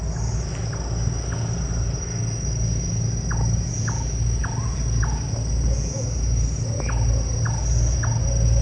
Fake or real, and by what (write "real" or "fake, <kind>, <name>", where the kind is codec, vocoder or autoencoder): real